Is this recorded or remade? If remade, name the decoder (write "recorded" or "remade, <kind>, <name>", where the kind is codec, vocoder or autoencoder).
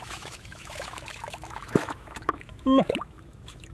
remade, autoencoder, DAC-VAE